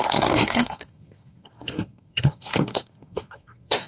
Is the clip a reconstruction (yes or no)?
yes